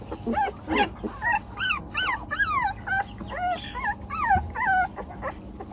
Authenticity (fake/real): real